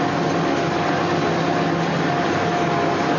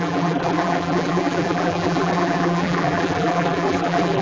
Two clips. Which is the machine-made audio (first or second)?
second